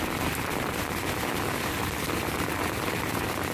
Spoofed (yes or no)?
no